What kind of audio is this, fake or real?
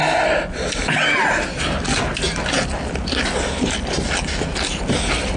real